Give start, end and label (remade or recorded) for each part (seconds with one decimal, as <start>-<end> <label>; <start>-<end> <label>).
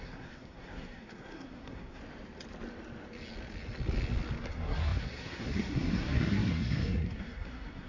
0.0-2.0 remade; 2.0-4.4 recorded; 4.4-7.9 remade